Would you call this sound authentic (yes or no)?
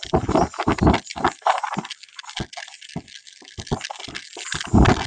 yes